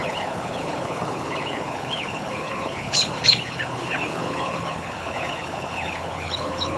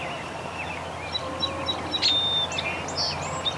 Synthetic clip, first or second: first